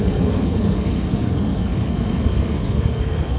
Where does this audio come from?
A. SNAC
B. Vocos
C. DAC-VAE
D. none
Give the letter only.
A